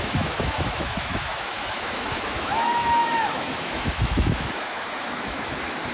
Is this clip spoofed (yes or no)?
yes